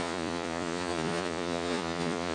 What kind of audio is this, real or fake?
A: fake